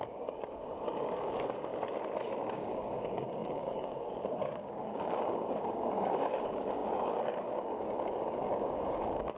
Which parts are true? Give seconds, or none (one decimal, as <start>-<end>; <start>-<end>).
1.7-2.5